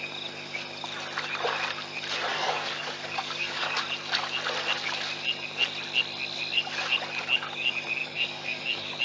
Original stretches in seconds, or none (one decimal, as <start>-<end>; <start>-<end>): 0.0-2.3; 3.8-8.0